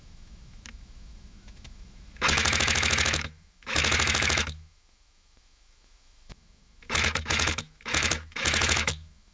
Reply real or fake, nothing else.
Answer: fake